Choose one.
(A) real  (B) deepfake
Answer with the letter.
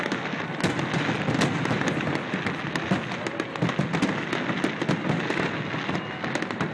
A